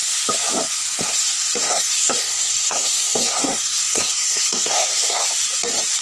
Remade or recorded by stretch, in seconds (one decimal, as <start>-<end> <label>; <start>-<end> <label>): 0.0-1.6 recorded; 1.6-5.2 remade; 5.2-6.0 recorded